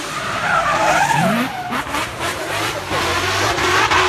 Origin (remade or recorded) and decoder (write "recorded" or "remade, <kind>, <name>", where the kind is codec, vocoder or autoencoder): remade, vocoder, BigVGAN v2